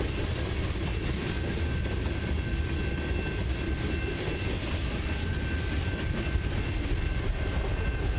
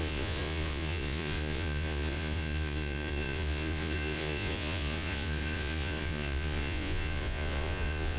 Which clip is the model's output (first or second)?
second